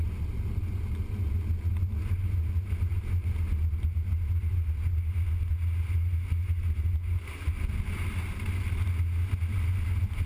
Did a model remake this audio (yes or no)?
no